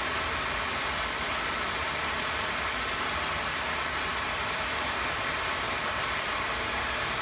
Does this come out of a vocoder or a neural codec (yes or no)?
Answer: no